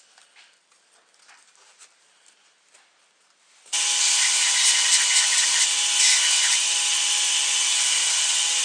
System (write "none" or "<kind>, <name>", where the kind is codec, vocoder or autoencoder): vocoder, BigVGAN v2